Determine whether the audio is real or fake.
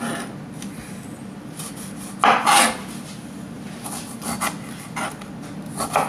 real